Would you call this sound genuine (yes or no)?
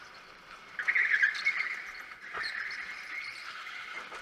yes